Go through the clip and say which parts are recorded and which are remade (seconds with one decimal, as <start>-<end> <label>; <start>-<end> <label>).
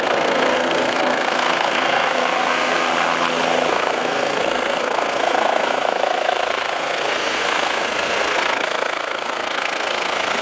0.0-2.9 remade; 2.9-3.7 recorded; 3.7-10.4 remade